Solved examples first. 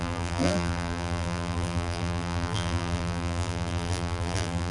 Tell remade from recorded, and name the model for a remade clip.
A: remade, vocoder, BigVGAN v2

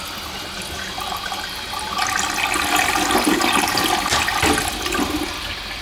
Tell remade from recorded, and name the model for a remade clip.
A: recorded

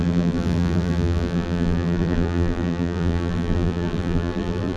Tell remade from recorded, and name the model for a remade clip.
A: remade, vocoder, BigVGAN v2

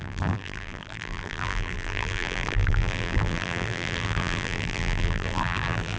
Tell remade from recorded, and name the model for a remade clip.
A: remade, vocoder, BigVGAN v2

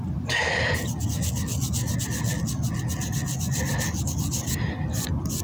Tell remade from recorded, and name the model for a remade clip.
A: recorded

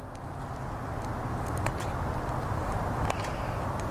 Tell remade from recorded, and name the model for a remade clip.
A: remade, vocoder, BigVGAN v2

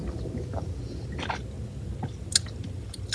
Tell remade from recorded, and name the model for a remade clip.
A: recorded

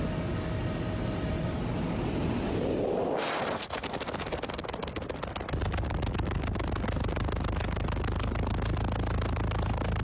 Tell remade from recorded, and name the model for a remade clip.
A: recorded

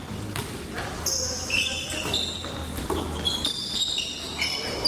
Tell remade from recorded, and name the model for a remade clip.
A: recorded